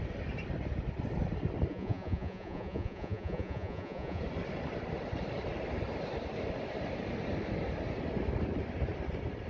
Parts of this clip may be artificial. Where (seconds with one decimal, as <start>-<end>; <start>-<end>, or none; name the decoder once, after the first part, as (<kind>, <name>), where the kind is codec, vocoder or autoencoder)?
1.7-4.2 (vocoder, Vocos)